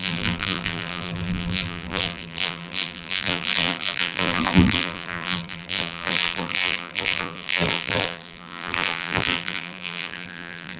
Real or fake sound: fake